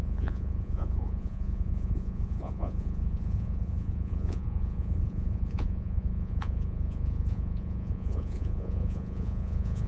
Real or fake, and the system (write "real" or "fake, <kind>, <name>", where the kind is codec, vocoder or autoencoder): fake, vocoder, Vocos